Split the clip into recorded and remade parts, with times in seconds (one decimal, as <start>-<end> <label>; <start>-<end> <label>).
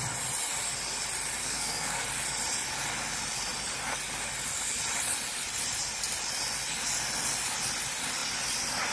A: 0.0-1.4 recorded; 1.4-2.0 remade; 2.0-8.9 recorded